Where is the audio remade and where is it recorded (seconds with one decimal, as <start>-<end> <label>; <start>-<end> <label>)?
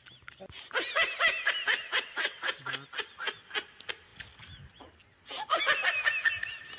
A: 0.0-1.8 recorded; 1.8-2.6 remade; 2.6-6.8 recorded